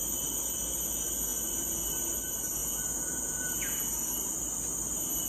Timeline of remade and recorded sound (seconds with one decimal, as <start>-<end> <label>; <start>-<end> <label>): 0.0-2.6 recorded; 2.6-3.8 remade; 3.8-5.3 recorded